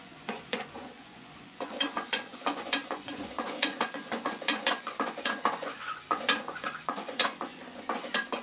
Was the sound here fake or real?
fake